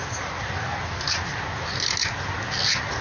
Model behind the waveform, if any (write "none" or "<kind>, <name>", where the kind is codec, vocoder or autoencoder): none